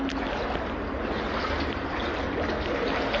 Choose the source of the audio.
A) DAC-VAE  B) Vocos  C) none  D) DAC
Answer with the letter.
C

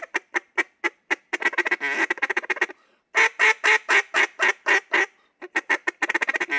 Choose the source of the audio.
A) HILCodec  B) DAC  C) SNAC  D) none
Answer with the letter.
D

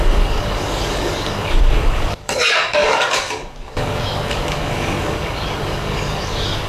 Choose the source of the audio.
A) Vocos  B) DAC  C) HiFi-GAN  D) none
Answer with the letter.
B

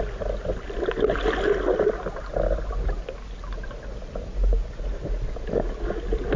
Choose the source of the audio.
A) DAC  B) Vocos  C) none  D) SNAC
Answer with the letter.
C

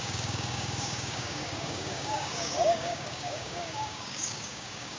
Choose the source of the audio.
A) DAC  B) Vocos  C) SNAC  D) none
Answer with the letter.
A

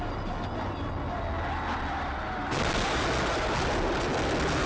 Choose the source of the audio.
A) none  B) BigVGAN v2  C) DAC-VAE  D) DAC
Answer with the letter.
A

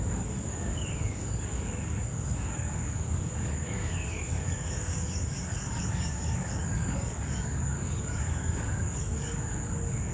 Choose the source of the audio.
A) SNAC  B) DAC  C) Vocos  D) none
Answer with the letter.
B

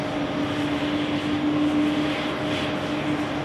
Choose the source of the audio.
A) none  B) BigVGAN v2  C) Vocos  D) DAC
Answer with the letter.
A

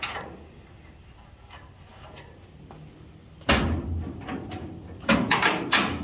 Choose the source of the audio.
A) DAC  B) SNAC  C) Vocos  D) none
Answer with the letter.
D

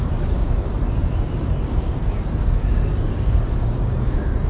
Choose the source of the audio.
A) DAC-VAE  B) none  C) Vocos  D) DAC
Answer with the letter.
D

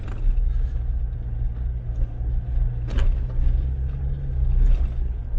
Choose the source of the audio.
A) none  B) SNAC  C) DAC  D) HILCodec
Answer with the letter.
A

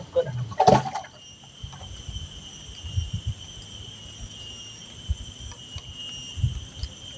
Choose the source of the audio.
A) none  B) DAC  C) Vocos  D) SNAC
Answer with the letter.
A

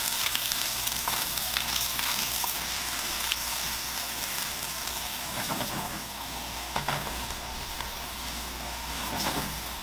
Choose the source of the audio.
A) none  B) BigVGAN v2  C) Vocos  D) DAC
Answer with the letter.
D